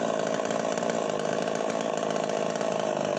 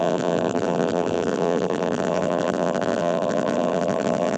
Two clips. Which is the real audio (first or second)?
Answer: first